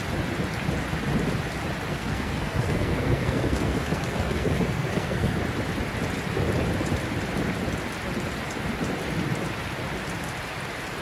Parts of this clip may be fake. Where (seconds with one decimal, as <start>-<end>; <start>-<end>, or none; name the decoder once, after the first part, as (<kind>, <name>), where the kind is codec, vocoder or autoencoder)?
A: 1.9-5.4 (codec, SNAC)